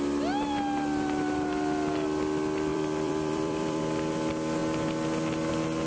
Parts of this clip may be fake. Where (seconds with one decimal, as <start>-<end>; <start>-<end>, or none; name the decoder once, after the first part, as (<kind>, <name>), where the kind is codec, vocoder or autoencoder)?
2.7-3.8 (vocoder, BigVGAN v2)